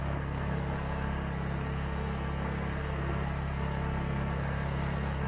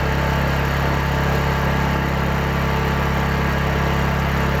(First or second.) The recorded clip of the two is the second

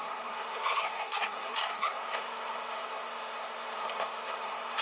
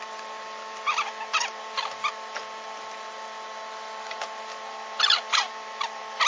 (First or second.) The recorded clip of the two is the second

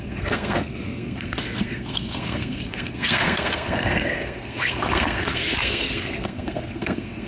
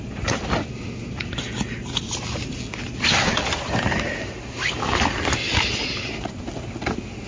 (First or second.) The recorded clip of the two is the second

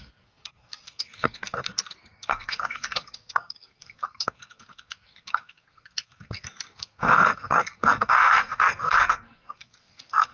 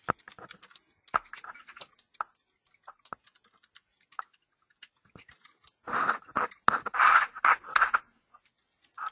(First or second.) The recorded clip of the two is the second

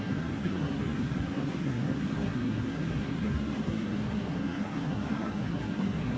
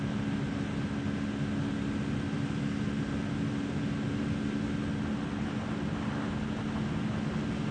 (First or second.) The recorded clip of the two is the second